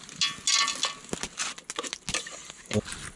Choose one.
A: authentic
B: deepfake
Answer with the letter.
A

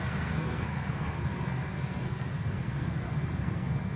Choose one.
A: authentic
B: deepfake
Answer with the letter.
B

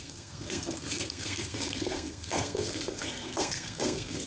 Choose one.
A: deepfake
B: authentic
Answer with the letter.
A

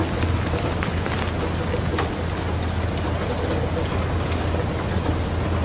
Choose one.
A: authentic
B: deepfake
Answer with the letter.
A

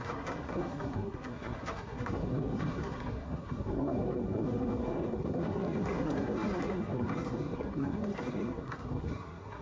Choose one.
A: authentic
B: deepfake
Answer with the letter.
B